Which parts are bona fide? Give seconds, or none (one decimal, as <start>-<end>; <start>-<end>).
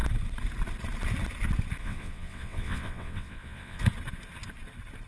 0.0-1.8; 3.8-5.1